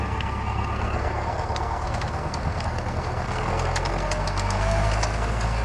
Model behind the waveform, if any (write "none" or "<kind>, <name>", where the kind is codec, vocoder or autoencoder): codec, SNAC